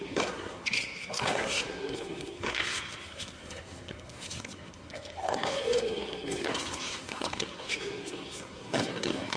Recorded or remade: remade